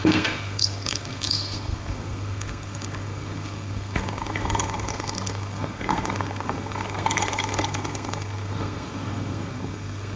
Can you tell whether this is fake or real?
fake